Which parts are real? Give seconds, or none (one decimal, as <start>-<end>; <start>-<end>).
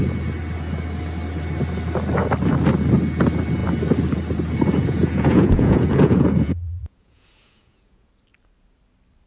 0.0-4.8; 8.1-9.3